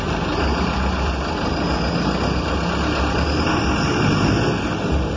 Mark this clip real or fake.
real